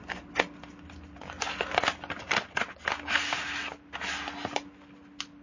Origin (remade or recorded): recorded